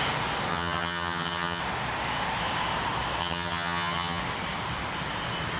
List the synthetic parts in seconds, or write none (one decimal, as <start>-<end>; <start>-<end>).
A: 0.5-1.6; 3.2-4.2